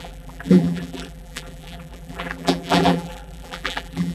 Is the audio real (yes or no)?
no